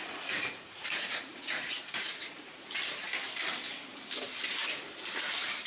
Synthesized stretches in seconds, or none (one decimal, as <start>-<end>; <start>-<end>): 0.0-2.7